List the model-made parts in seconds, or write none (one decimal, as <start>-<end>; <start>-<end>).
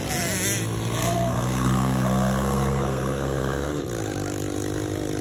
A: 1.0-3.8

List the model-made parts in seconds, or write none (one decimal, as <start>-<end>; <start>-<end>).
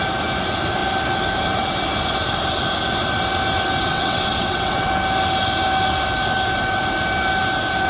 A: 3.9-4.9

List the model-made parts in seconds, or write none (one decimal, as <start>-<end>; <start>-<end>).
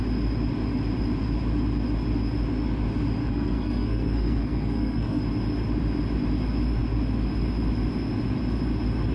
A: 3.2-5.2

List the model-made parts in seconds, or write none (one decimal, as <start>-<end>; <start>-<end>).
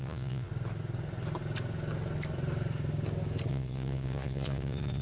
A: 0.0-0.5; 3.5-5.0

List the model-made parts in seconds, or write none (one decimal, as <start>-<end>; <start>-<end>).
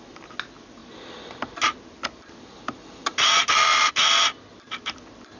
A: none